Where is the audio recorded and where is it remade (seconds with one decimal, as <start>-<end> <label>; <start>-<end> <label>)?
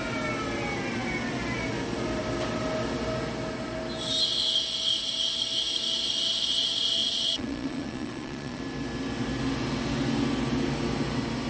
0.0-7.0 recorded; 7.0-8.6 remade; 8.6-11.5 recorded